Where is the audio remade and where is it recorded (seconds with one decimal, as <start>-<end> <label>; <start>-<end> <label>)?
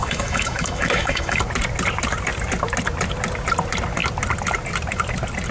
0.0-1.4 remade; 1.4-5.5 recorded